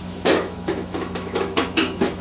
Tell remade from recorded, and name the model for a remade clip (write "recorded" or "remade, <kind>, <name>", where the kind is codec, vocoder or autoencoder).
remade, autoencoder, DAC-VAE